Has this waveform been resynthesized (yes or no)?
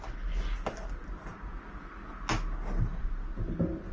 no